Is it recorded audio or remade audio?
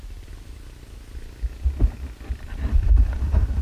recorded